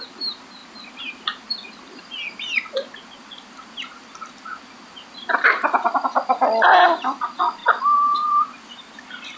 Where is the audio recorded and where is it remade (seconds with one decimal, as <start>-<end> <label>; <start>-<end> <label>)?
0.0-9.4 recorded